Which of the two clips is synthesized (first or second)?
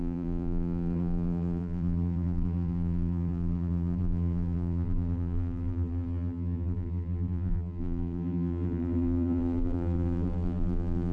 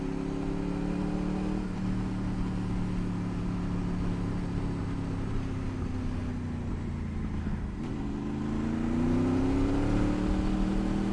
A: first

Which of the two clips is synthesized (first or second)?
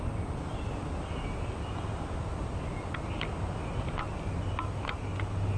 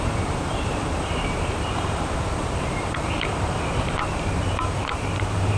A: second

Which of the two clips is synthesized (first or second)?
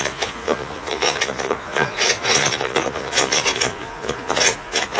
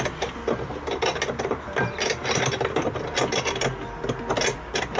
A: first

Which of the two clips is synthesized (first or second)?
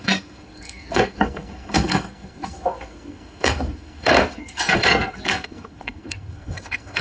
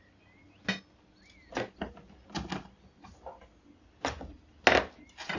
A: first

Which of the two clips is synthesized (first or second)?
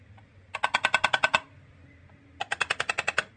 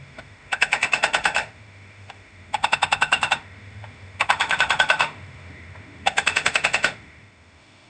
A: second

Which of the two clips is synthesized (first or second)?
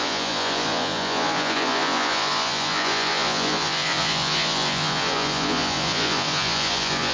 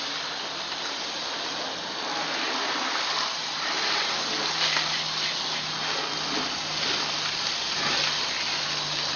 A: first